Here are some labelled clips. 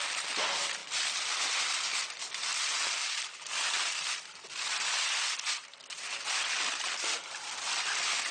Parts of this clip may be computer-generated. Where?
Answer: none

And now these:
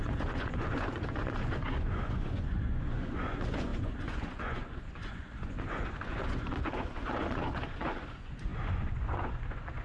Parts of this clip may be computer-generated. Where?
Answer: 0.0-9.8